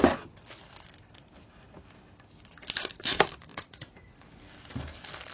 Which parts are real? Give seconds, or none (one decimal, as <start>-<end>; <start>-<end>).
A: 0.0-3.5; 4.2-5.3